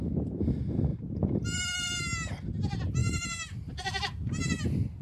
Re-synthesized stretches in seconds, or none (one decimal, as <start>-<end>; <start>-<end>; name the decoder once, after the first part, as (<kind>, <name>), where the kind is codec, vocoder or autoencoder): 0.9-2.0 (vocoder, BigVGAN v2); 3.0-4.5